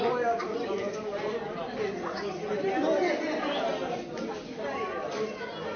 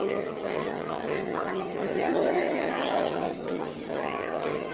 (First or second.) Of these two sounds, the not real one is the second